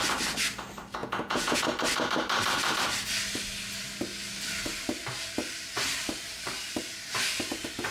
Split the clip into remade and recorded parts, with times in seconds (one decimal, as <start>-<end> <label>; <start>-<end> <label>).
0.0-1.0 recorded; 1.0-1.6 remade; 1.6-7.9 recorded